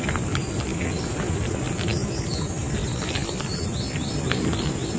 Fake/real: real